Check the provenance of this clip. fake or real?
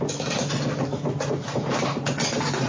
real